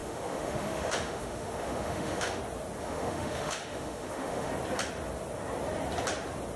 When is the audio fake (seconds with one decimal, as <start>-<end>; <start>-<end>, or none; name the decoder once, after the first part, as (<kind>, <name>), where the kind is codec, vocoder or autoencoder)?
0.0-2.4 (autoencoder, DAC-VAE); 2.8-4.5